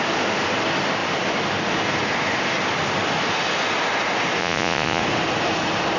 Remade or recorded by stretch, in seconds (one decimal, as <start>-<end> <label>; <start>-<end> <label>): 0.0-4.4 recorded; 4.4-5.0 remade; 5.0-6.0 recorded